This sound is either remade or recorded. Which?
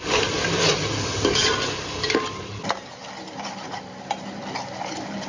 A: recorded